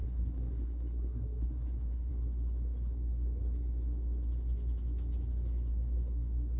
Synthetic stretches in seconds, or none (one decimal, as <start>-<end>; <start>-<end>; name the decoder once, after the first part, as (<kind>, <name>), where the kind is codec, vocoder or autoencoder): 0.0-2.1 (codec, SNAC)